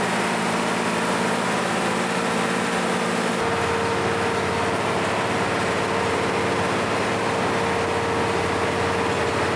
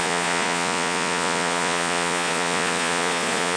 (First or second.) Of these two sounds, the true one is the first